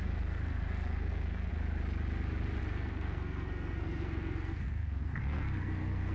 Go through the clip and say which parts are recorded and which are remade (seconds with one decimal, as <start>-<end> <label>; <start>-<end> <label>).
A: 0.0-1.5 remade; 1.5-2.6 recorded; 2.6-6.1 remade